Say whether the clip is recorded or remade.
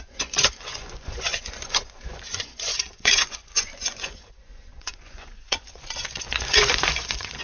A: remade